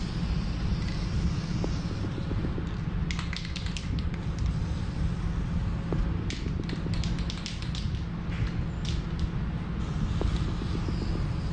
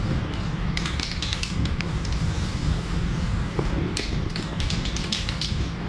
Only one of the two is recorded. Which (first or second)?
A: first